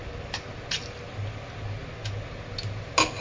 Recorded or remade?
recorded